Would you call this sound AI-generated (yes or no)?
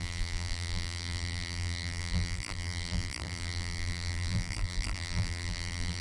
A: yes